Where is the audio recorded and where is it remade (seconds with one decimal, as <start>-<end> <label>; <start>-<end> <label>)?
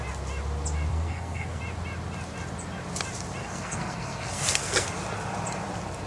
0.0-0.9 recorded; 0.9-1.6 remade; 1.6-3.4 recorded; 3.4-4.9 remade; 4.9-6.1 recorded